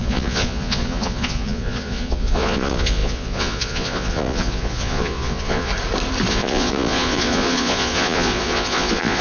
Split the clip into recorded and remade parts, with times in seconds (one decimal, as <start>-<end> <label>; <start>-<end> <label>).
0.0-5.7 remade; 5.7-6.3 recorded; 6.3-9.2 remade